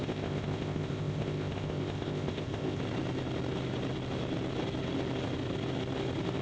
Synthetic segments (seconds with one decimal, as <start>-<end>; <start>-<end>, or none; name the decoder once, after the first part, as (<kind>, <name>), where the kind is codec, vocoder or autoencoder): 0.0-2.8 (codec, ZipCodec)